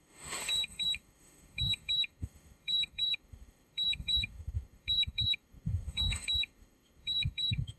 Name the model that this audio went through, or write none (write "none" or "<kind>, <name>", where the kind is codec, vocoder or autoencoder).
autoencoder, DAC-VAE